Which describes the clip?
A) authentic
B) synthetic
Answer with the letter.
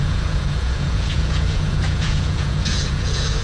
B